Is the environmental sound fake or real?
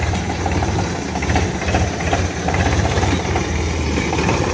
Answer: fake